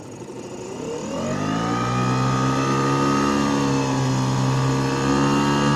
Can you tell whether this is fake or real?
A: real